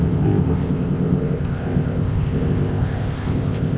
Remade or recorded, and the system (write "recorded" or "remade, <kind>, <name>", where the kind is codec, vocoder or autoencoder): remade, codec, ZipCodec